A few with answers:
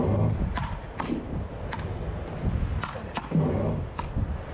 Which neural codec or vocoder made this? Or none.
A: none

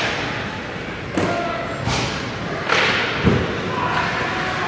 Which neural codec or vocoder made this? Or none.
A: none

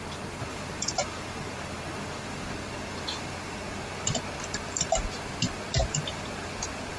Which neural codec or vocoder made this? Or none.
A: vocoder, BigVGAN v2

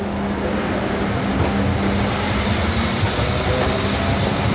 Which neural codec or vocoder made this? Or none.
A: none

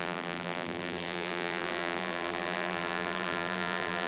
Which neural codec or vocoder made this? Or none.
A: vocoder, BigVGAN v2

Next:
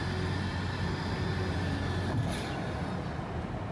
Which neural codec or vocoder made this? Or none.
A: none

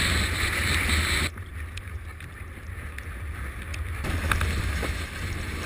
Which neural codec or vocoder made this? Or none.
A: none